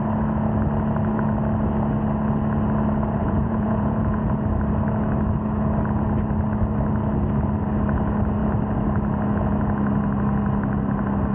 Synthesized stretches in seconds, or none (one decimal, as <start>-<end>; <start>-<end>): 3.2-4.3